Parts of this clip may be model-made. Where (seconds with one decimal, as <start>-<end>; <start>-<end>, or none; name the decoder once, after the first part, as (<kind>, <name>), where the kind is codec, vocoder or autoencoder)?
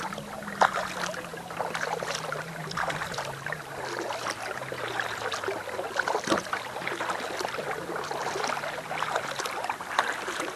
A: none